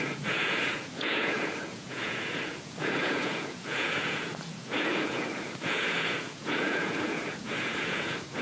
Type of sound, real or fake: fake